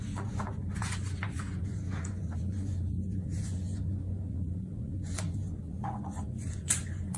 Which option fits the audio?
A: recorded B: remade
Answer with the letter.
B